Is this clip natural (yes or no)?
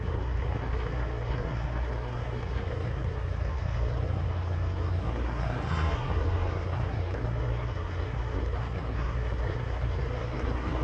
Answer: no